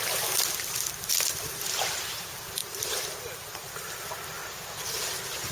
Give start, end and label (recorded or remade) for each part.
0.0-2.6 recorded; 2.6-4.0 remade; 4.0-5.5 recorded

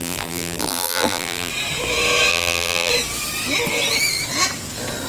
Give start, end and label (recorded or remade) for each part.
0.0-1.5 remade; 1.5-2.3 recorded; 2.3-2.9 remade; 2.9-5.1 recorded

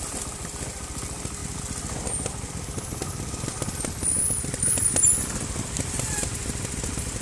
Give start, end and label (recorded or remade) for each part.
0.0-1.4 remade; 1.4-2.5 recorded; 2.5-7.2 remade